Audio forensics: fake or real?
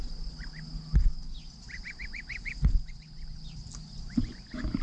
real